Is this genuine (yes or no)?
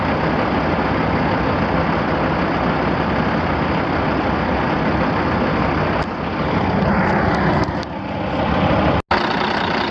yes